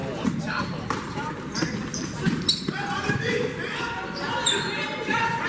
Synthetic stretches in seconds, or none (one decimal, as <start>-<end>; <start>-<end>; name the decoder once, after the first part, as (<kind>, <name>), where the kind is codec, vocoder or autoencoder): 0.0-5.5 (vocoder, BigVGAN v2)